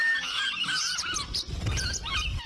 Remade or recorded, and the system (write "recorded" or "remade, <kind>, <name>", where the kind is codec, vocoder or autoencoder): recorded